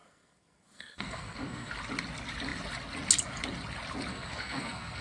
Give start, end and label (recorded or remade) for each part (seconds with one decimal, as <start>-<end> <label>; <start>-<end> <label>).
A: 0.0-1.7 remade; 1.7-4.1 recorded; 4.1-5.0 remade